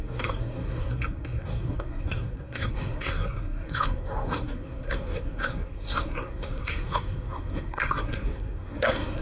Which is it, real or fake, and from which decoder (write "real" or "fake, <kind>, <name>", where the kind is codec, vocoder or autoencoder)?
fake, codec, SNAC